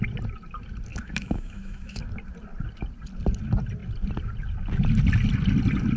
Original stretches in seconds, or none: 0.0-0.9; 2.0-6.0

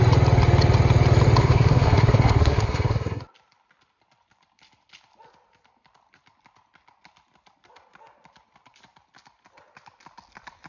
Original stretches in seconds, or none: 0.0-1.4; 3.2-10.7

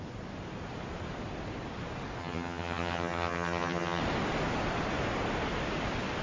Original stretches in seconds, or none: 0.0-2.2; 4.0-6.2

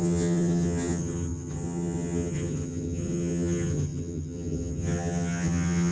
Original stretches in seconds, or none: none

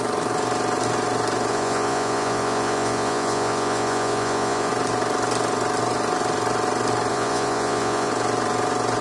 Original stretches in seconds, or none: 0.0-1.5; 4.7-7.1; 8.1-9.0